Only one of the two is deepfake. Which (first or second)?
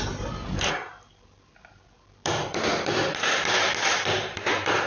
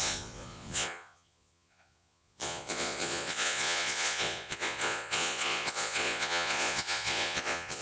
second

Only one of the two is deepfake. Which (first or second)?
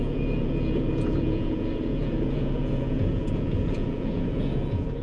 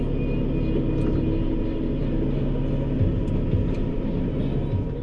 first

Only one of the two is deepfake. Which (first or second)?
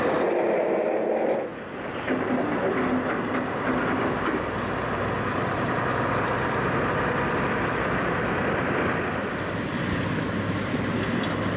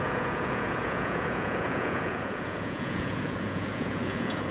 second